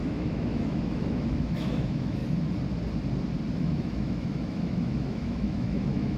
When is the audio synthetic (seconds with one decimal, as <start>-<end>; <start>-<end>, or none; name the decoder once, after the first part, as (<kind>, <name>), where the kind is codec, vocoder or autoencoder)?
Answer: 0.0-2.2 (autoencoder, DAC-VAE); 3.5-6.2